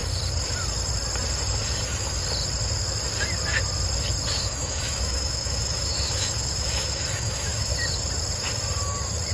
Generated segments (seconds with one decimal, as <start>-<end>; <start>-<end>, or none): 4.3-7.7

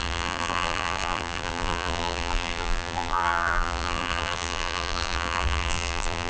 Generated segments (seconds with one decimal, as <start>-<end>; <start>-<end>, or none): 0.0-6.3

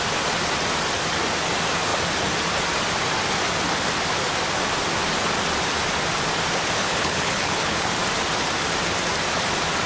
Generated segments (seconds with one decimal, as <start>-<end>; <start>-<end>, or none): 6.8-7.9

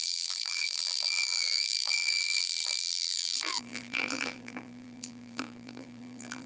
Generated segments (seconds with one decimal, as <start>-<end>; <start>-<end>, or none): 0.0-6.5

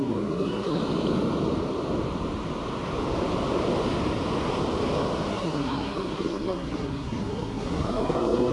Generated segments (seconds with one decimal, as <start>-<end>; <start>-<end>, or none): 0.0-0.8; 5.3-8.5